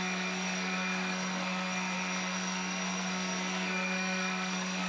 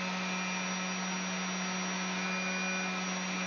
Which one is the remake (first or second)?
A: first